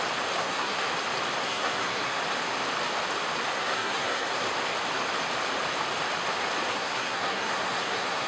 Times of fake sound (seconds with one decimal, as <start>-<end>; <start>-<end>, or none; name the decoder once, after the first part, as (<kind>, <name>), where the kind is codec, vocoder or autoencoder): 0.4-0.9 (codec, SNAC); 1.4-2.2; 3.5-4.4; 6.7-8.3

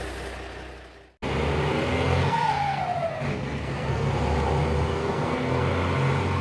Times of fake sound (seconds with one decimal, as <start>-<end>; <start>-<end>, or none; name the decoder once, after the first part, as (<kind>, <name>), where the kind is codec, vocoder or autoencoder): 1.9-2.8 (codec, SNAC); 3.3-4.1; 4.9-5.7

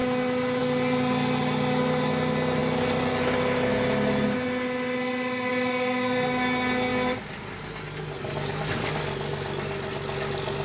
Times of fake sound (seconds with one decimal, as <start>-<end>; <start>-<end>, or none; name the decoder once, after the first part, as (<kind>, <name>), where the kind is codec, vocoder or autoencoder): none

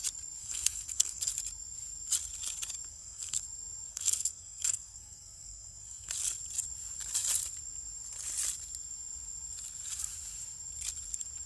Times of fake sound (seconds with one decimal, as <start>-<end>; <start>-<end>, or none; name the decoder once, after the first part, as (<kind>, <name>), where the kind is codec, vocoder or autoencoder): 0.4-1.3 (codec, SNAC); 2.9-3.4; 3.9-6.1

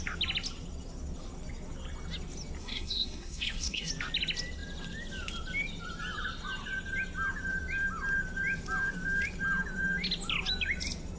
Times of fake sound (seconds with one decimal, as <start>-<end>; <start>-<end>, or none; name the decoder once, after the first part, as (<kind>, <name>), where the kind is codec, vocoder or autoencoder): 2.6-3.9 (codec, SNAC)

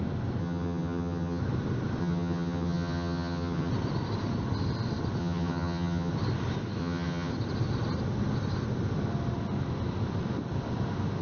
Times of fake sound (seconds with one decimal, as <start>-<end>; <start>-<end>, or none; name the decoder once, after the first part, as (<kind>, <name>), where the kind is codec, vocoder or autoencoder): 0.4-1.4 (vocoder, HiFi-GAN); 2.0-3.7; 5.2-6.1; 6.8-7.3

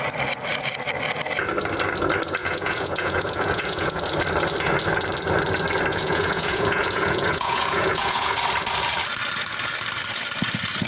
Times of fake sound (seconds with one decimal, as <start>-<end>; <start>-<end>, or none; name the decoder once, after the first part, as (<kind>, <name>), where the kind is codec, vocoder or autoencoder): 2.4-4.0 (vocoder, Vocos); 5.9-8.4